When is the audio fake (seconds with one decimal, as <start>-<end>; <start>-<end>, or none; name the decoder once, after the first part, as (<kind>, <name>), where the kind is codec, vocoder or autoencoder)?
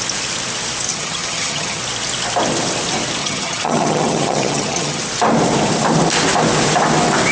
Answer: 0.9-1.8 (vocoder, HiFi-GAN); 3.2-5.0